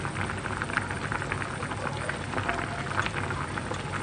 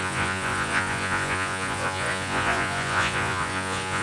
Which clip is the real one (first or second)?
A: first